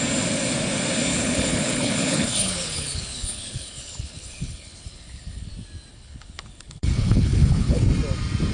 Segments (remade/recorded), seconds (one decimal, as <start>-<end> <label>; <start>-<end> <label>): 0.0-1.1 recorded; 1.1-5.5 remade; 5.5-5.9 recorded; 5.9-7.8 remade; 7.8-8.5 recorded